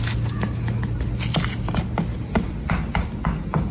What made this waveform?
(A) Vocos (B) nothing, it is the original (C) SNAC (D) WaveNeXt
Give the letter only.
B